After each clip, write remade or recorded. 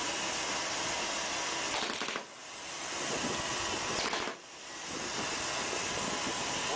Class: recorded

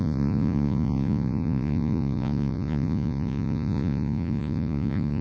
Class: remade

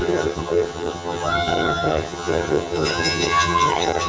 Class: remade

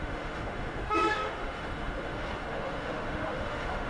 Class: remade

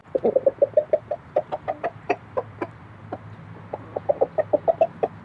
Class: remade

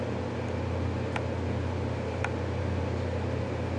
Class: recorded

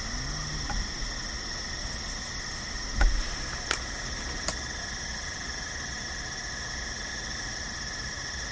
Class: recorded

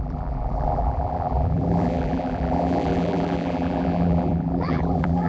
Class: remade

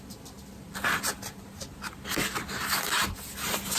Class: recorded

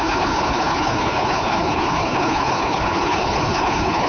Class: remade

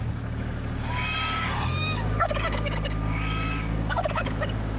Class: remade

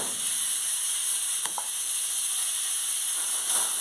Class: recorded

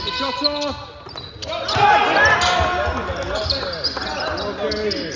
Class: recorded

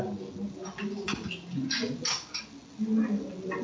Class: recorded